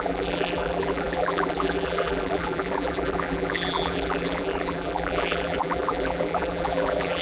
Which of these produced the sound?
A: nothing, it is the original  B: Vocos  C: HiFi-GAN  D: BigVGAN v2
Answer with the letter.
D